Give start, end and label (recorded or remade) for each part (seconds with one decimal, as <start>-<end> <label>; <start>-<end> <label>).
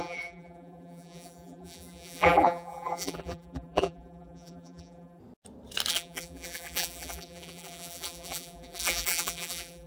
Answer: 0.0-5.2 remade; 5.2-5.9 recorded; 5.9-9.9 remade